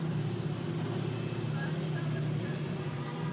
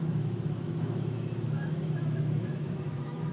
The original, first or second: first